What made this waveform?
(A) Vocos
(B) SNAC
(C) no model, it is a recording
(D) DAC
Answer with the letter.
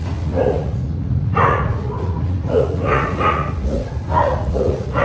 A